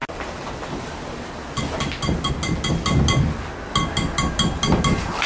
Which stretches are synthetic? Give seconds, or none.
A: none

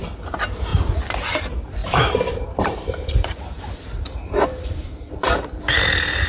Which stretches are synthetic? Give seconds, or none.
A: 1.8-5.6 (vocoder, BigVGAN v2)

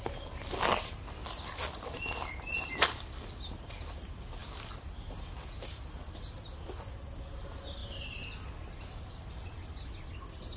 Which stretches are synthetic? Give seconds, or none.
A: 1.2-3.2 (vocoder, BigVGAN v2)

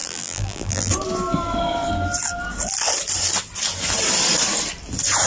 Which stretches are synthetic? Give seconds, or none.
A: 0.0-0.9 (vocoder, BigVGAN v2)

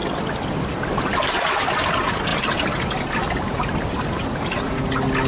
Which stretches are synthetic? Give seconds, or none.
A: 0.0-1.2 (vocoder, BigVGAN v2); 2.3-5.3

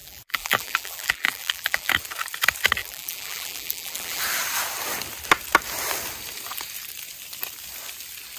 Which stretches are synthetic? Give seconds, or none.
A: 0.0-1.9 (vocoder, BigVGAN v2); 2.8-4.2

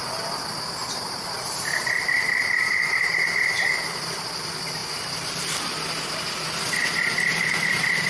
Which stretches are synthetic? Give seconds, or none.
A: 0.8-4.3 (vocoder, BigVGAN v2); 4.8-5.6; 7.3-8.1

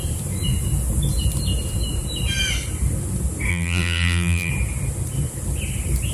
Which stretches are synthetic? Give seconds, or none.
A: 3.5-4.5 (vocoder, BigVGAN v2)